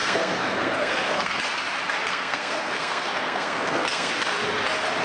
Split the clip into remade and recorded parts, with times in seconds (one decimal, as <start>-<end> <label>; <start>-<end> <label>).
0.0-1.4 remade; 1.4-2.1 recorded; 2.1-4.1 remade; 4.1-5.0 recorded